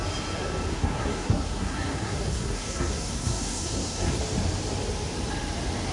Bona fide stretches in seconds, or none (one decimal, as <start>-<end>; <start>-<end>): 0.0-0.7; 4.2-5.9